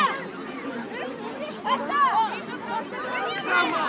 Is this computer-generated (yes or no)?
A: no